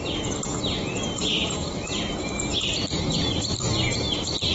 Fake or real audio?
fake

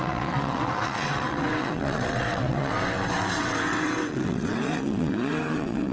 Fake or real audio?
fake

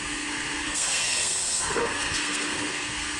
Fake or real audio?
fake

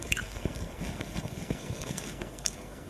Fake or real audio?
fake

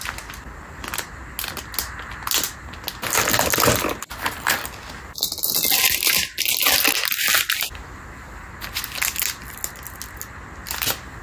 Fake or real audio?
real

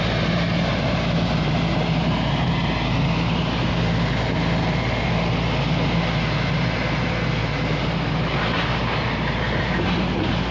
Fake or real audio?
real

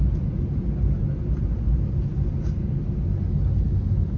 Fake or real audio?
real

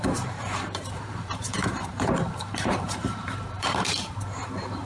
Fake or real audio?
fake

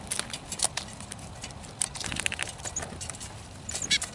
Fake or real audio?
real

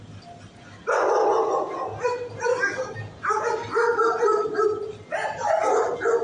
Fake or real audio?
real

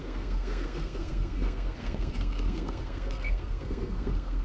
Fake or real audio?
fake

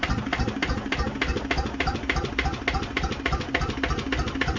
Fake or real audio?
real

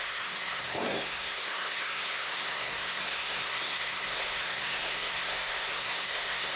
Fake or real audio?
fake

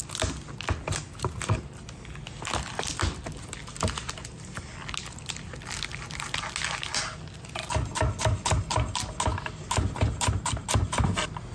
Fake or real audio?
real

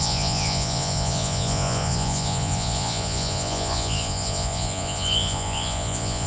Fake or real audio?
fake